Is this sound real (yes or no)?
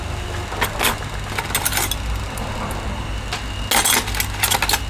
yes